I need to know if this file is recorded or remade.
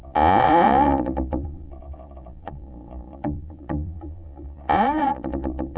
remade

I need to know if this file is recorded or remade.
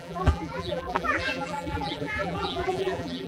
remade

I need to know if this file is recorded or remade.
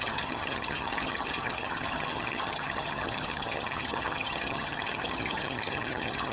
remade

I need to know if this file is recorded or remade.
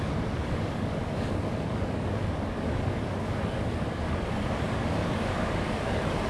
remade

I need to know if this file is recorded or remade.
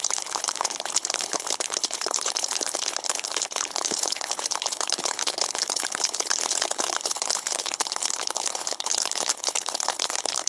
remade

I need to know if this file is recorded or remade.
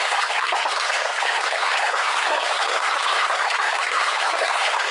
remade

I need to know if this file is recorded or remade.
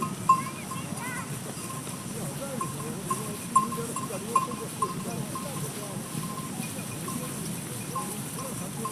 recorded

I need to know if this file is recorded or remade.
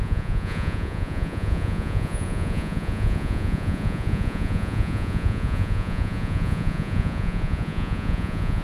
remade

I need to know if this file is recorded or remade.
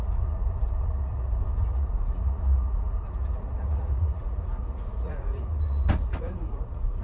remade